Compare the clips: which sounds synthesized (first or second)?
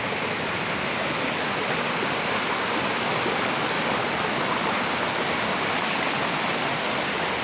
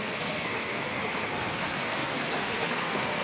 second